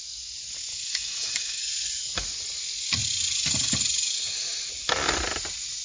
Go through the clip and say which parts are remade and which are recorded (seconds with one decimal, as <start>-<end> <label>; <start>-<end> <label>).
0.0-0.7 recorded; 0.7-1.6 remade; 1.6-5.8 recorded